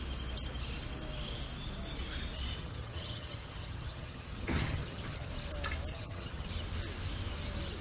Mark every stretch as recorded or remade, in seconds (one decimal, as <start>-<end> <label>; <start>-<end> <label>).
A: 0.0-2.6 recorded; 2.6-5.3 remade; 5.3-5.9 recorded; 5.9-6.5 remade; 6.5-7.8 recorded